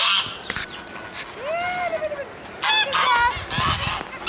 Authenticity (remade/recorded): recorded